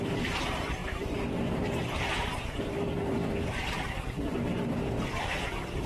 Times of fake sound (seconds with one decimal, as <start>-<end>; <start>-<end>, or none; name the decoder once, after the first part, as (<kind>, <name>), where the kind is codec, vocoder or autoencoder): 0.0-5.9 (vocoder, BigVGAN v2)